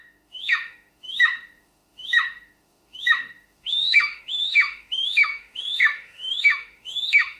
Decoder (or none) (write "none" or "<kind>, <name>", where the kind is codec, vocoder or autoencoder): autoencoder, DAC-VAE